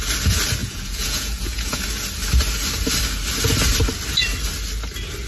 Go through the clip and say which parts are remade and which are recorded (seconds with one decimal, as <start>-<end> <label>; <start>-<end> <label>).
0.0-0.6 recorded; 0.6-1.8 remade; 1.8-5.3 recorded